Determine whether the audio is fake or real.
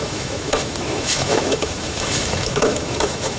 fake